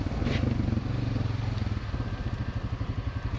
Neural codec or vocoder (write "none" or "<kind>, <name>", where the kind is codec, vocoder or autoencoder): none